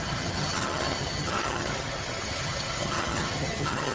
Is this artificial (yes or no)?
yes